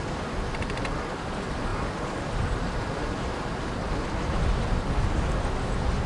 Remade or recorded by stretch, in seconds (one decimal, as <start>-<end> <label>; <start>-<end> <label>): 0.0-6.1 recorded